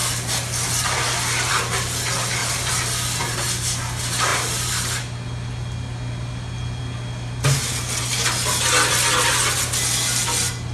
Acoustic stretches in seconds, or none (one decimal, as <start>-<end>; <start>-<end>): 0.0-10.7